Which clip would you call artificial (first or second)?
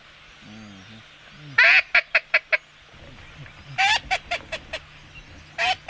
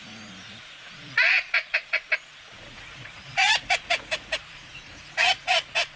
second